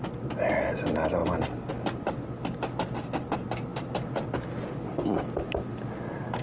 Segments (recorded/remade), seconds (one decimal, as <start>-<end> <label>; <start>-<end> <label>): 0.0-6.4 recorded